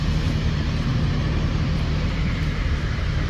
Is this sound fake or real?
fake